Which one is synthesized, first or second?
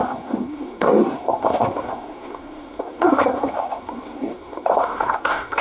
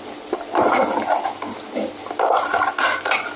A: first